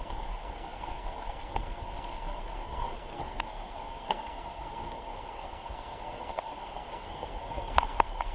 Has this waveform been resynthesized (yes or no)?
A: yes